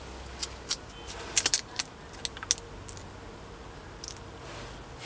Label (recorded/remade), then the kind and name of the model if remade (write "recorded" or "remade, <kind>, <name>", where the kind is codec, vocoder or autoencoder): recorded